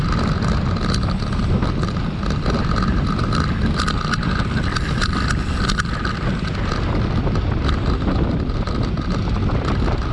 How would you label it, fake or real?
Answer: real